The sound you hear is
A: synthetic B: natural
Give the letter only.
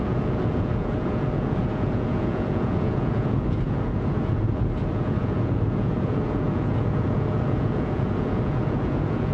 A